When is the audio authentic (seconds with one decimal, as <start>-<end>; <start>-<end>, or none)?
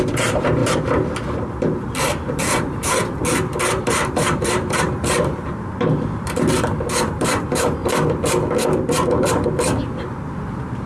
0.6-2.0; 3.2-3.8; 7.8-10.5